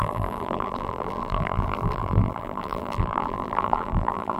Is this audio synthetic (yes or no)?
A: yes